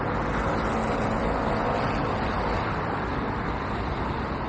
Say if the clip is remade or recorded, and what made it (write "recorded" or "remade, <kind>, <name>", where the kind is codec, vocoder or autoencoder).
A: recorded